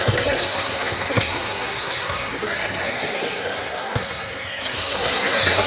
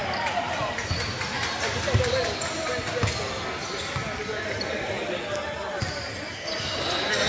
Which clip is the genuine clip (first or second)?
second